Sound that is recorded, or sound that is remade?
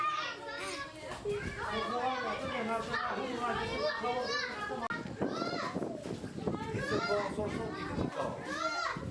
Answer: recorded